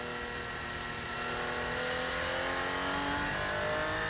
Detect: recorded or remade recorded